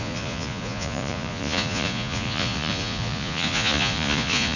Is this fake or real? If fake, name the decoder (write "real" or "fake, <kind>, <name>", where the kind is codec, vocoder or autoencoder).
fake, vocoder, Vocos